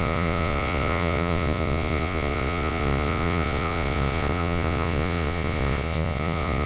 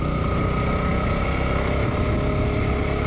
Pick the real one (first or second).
second